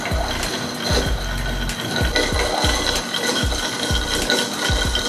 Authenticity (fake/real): real